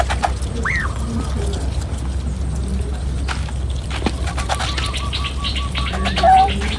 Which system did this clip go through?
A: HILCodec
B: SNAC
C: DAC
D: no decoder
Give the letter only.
D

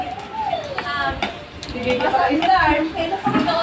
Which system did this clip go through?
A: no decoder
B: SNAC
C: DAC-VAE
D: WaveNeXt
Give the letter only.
A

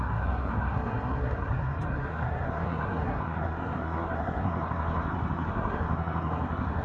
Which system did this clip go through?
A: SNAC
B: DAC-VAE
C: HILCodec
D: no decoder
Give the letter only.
A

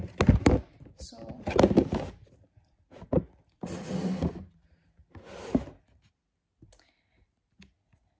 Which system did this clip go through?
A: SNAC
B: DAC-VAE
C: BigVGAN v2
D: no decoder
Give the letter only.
D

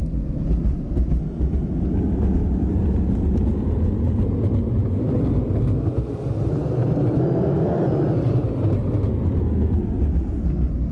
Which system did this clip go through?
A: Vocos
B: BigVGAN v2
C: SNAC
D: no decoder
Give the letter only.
D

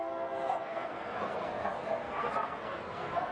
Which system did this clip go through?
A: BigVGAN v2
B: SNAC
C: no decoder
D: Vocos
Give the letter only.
B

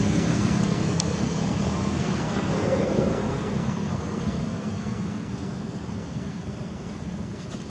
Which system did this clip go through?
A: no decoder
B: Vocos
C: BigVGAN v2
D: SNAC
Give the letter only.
D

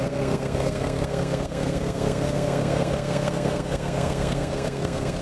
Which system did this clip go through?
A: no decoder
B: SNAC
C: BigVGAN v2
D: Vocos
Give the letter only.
B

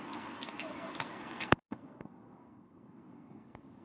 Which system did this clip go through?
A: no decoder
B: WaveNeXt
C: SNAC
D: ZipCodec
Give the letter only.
C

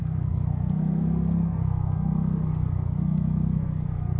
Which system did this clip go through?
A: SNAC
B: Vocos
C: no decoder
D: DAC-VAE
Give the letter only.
A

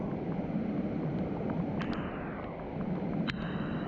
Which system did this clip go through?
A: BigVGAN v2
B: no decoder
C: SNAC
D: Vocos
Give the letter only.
B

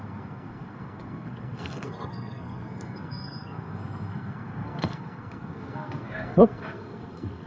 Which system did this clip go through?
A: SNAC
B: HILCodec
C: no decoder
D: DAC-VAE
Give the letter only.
A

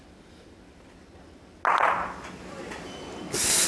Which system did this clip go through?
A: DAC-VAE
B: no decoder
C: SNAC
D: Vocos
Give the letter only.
B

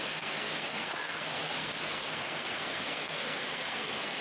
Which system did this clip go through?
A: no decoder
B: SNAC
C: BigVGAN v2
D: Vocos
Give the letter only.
B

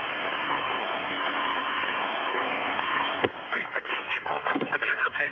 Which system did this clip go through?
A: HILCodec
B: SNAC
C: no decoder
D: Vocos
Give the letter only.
B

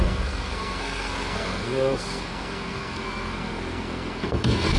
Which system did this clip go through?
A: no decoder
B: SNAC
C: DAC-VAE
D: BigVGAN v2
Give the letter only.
B